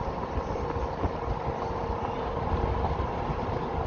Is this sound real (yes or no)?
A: yes